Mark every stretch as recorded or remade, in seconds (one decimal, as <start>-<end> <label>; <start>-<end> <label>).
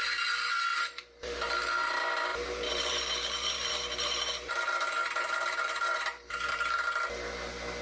0.0-0.7 recorded; 0.7-1.9 remade; 1.9-2.3 recorded; 2.3-7.0 remade; 7.0-7.8 recorded